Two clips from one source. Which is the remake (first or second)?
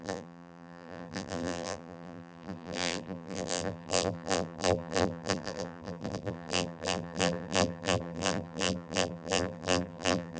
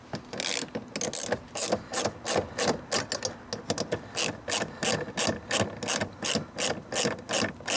first